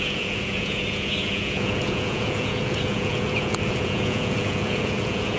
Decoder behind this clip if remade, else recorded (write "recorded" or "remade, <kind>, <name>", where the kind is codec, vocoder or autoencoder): remade, vocoder, Vocos